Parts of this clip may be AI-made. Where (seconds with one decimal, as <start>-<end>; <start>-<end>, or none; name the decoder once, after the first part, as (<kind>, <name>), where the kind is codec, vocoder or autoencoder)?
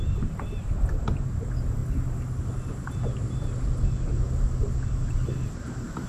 0.0-1.8 (vocoder, BigVGAN v2); 5.5-6.1